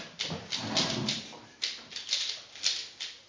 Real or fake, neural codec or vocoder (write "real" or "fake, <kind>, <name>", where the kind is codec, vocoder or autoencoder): real